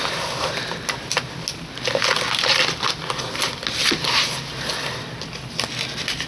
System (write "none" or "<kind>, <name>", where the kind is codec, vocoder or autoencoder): none